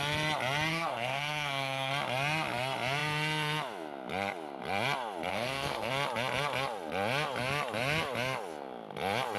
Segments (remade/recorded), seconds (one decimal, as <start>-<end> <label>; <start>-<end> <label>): 0.0-0.7 recorded; 0.7-1.9 remade; 1.9-5.3 recorded; 5.3-5.9 remade; 5.9-9.4 recorded